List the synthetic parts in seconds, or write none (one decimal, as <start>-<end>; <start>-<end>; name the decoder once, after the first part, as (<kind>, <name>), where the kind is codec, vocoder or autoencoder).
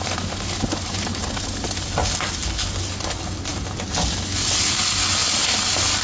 none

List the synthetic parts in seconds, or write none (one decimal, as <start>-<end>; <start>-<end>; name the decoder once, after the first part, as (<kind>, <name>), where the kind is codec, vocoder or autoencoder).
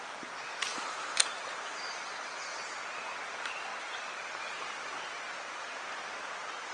0.7-2.8 (vocoder, BigVGAN v2)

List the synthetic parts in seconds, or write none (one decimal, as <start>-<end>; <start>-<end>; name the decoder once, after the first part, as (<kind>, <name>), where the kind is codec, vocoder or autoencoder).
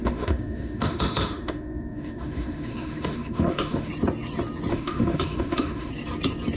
0.0-3.9 (autoencoder, DAC-VAE); 4.7-5.9